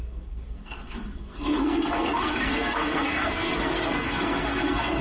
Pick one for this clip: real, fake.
fake